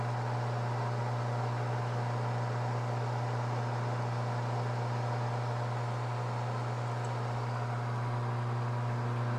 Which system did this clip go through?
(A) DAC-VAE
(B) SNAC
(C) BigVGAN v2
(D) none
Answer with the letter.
D